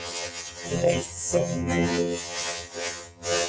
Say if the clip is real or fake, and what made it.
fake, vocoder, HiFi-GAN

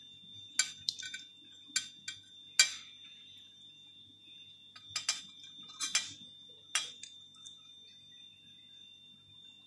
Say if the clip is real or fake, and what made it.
real